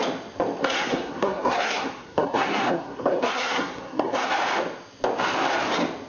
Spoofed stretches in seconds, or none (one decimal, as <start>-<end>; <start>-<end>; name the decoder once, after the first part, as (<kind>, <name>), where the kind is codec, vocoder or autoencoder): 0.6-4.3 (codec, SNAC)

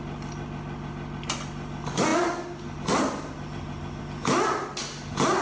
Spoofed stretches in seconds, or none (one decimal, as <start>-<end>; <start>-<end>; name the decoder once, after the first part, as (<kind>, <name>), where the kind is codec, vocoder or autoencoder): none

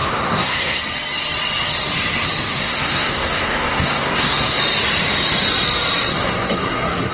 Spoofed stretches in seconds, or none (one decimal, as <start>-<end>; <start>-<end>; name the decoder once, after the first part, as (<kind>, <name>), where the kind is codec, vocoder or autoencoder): 0.0-0.8 (codec, SNAC); 2.6-4.6; 6.1-7.1

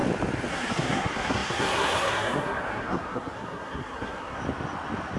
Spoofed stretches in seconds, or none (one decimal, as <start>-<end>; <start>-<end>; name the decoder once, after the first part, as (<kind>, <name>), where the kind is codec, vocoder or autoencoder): 0.5-4.4 (codec, SNAC)